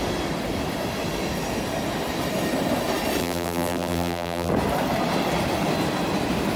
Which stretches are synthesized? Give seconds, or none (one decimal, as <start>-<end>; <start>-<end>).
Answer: 3.2-4.5